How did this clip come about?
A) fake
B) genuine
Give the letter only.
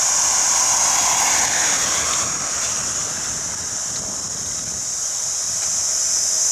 B